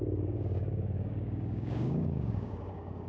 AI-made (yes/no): yes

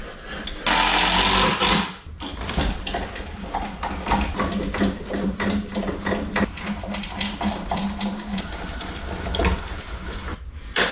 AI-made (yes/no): no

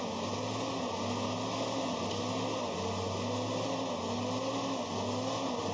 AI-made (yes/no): no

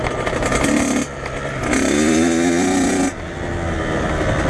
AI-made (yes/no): no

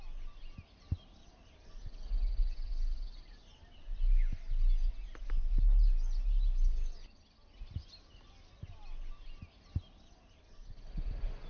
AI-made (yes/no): no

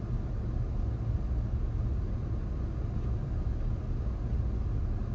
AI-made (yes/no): no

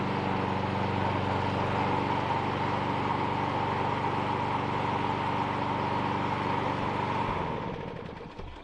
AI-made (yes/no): no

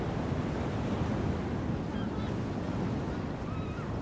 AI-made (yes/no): no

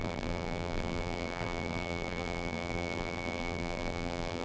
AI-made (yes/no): yes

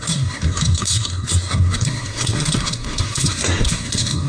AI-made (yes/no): yes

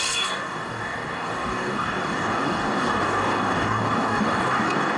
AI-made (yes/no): yes